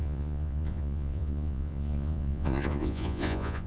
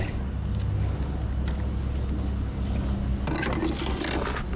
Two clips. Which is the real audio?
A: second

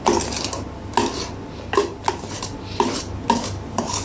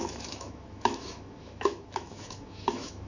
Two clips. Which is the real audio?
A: first